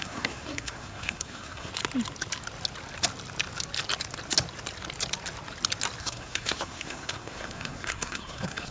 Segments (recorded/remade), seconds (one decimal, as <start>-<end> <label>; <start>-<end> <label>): 0.0-1.7 remade; 1.7-6.0 recorded; 6.0-8.7 remade